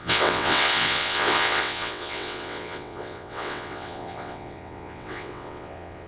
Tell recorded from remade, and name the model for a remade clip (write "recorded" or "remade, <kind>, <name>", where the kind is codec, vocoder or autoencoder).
remade, vocoder, WaveNeXt